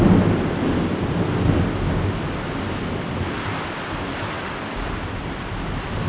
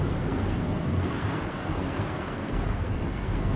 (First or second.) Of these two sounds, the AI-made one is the second